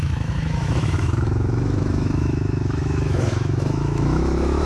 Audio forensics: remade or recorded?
remade